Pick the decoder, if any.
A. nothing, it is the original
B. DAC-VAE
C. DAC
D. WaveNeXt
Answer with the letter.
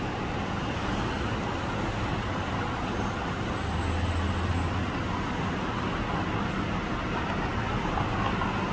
A